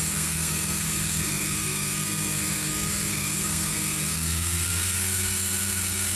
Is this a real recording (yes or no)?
no